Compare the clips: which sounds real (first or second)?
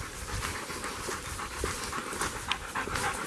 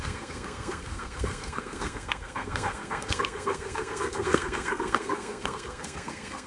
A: first